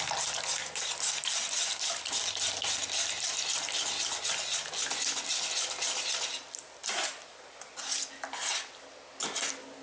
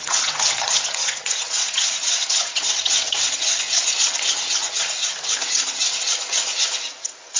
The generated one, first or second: second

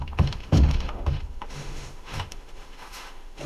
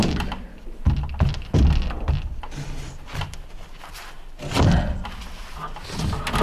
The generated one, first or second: first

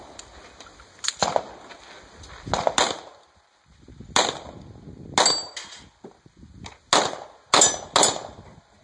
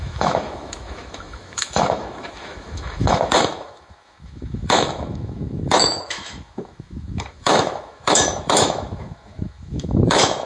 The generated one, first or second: second